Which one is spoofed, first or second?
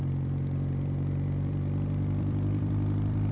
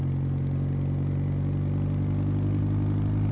first